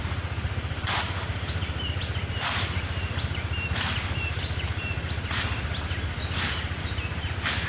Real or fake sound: real